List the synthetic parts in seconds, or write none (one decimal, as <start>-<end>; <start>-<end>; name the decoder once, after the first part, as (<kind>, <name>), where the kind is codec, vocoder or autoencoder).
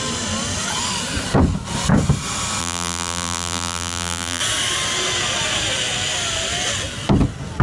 2.6-4.4 (vocoder, BigVGAN v2)